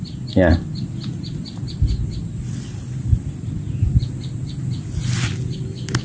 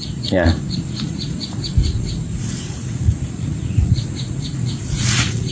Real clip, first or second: first